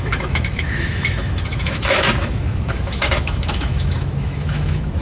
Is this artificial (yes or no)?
yes